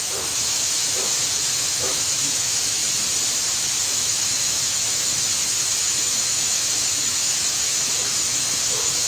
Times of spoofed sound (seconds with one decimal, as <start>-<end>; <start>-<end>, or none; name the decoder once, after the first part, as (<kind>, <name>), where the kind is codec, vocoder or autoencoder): 0.0-2.8 (autoencoder, DAC-VAE); 3.8-9.1